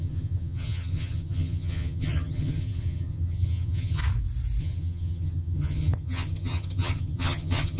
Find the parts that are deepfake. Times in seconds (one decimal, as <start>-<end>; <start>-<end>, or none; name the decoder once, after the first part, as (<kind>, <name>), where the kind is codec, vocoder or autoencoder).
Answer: 0.0-4.0 (vocoder, HiFi-GAN); 4.6-7.8

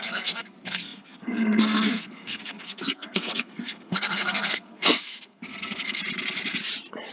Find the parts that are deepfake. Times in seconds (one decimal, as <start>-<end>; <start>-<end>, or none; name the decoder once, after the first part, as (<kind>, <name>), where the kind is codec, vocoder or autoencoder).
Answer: 0.0-6.0 (codec, SNAC)

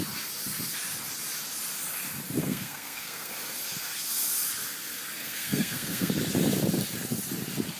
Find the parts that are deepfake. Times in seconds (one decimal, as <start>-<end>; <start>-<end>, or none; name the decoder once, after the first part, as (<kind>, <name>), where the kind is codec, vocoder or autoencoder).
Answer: 2.4-3.3 (codec, SNAC); 5.2-6.1

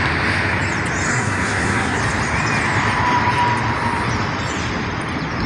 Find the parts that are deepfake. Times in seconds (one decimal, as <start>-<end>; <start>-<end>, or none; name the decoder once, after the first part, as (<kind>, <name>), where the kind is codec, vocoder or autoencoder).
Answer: 1.1-2.0 (codec, SNAC)